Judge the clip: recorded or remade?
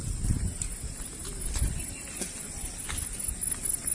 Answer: recorded